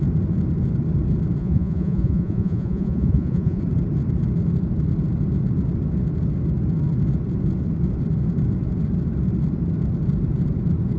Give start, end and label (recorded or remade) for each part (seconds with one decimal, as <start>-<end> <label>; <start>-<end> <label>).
0.0-1.4 recorded; 1.4-3.6 remade; 3.6-11.0 recorded